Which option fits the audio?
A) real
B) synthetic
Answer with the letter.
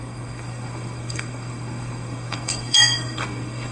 B